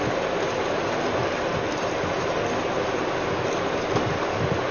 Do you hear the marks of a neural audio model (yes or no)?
no